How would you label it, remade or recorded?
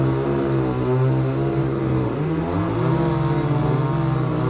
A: recorded